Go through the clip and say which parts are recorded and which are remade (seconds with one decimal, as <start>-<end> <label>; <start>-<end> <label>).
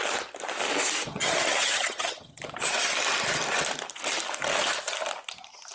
0.0-1.1 recorded; 1.1-2.4 remade; 2.4-5.7 recorded